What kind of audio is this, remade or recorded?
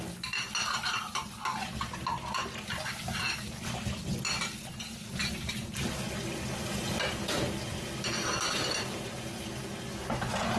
recorded